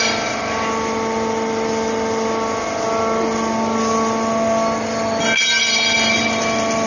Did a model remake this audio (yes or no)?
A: no